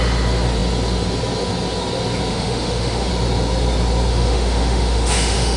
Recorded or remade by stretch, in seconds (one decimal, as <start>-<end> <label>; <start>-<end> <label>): 0.0-2.3 recorded; 2.3-3.1 remade; 3.1-4.1 recorded; 4.1-5.6 remade